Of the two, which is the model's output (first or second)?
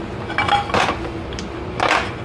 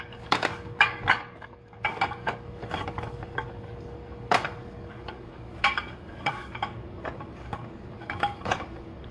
second